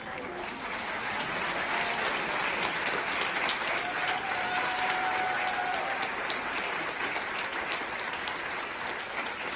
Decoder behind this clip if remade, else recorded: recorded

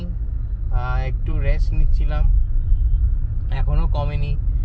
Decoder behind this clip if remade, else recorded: recorded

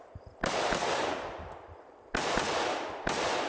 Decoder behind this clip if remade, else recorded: recorded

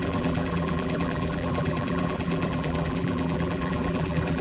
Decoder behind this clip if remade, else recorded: remade, vocoder, BigVGAN v2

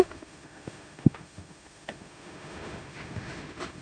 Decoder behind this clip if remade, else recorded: remade, autoencoder, DAC-VAE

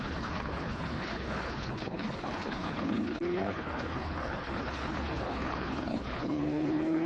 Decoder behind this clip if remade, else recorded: remade, codec, HILCodec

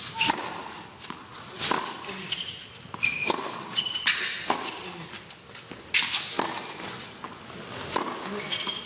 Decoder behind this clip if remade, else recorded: recorded